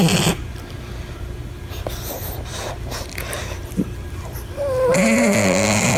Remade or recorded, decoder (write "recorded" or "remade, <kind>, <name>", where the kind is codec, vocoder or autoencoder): recorded